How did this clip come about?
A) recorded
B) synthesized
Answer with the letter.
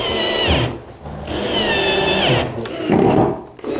A